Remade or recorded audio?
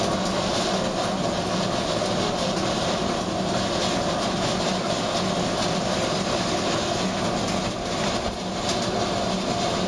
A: recorded